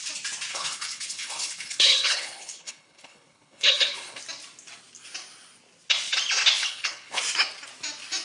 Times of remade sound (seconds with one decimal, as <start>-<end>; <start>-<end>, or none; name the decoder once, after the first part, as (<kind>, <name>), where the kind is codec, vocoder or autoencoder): 0.5-4.2 (codec, HILCodec); 6.6-7.2

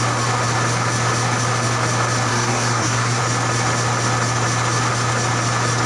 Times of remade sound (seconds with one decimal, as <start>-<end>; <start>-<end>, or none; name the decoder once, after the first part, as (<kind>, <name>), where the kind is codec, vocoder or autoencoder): 2.3-3.2 (codec, SNAC)

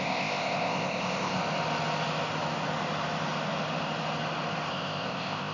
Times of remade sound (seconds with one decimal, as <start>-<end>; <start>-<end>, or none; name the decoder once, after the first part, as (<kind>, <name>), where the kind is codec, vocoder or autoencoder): 0.0-1.4 (codec, ZipCodec); 4.7-5.5

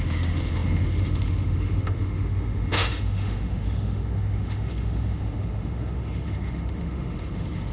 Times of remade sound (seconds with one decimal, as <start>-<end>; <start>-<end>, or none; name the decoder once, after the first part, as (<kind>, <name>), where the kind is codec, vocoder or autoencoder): 0.0-7.7 (autoencoder, DAC-VAE)

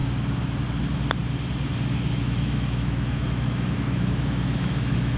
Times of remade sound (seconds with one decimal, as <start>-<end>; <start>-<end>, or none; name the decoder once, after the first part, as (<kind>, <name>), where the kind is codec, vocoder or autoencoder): 2.1-5.2 (autoencoder, DAC-VAE)

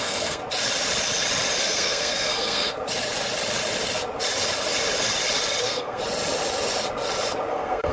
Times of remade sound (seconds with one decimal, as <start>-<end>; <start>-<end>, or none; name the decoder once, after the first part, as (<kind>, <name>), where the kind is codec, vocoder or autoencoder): 0.0-0.4 (codec, SNAC); 1.6-2.7; 5.6-6.0; 7.5-7.9